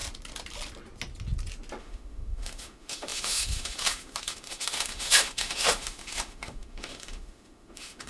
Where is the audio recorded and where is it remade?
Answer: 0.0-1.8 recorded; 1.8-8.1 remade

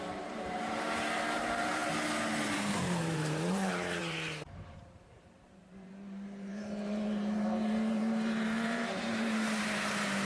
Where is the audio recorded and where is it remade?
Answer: 0.0-1.8 remade; 1.8-2.4 recorded; 2.4-10.2 remade

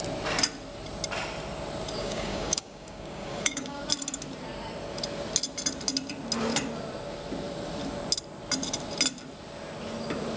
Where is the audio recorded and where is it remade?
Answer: 0.0-2.0 recorded; 2.0-3.8 remade; 3.8-10.4 recorded

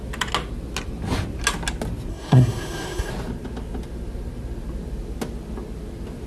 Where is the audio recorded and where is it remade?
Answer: 0.0-2.1 recorded; 2.1-3.1 remade; 3.1-6.3 recorded

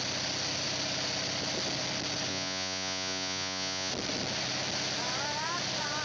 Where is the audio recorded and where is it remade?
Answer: 0.0-2.3 recorded; 2.3-3.9 remade; 3.9-6.0 recorded